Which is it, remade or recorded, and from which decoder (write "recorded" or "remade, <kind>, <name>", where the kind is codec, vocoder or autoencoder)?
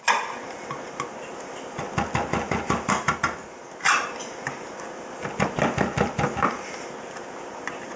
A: recorded